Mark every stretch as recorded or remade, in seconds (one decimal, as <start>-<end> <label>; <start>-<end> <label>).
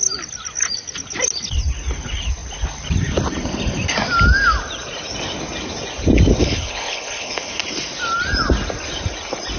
0.0-6.4 recorded; 6.4-7.6 remade; 7.6-9.6 recorded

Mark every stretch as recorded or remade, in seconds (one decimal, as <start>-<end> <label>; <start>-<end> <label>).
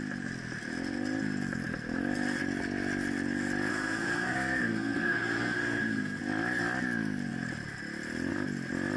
0.0-3.7 recorded; 3.7-6.2 remade; 6.2-9.0 recorded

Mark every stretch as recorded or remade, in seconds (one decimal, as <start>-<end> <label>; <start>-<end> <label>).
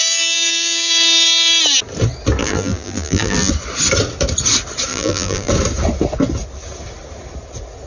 0.0-0.9 remade; 0.9-2.4 recorded; 2.4-3.5 remade; 3.5-4.9 recorded; 4.9-5.5 remade; 5.5-7.9 recorded